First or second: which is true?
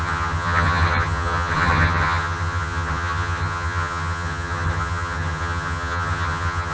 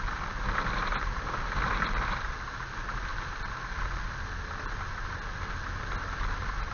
second